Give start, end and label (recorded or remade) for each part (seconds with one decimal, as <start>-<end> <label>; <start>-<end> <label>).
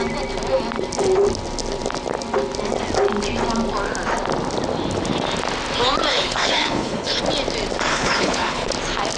0.0-6.1 recorded; 6.1-7.2 remade; 7.2-7.9 recorded; 7.9-8.7 remade; 8.7-9.2 recorded